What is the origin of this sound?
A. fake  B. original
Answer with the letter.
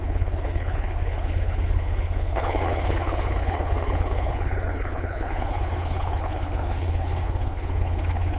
A